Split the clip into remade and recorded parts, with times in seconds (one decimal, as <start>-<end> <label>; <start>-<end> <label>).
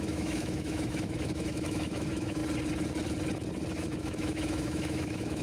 0.0-2.4 remade; 2.4-3.7 recorded; 3.7-5.4 remade